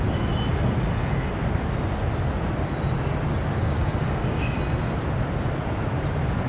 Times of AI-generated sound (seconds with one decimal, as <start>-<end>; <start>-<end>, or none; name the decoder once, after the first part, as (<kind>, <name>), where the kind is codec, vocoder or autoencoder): 3.6-4.6 (codec, DAC)